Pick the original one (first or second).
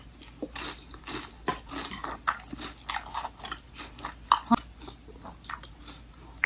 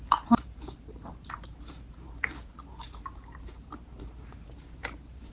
first